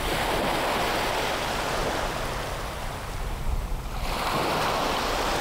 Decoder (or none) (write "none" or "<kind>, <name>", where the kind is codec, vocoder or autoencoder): none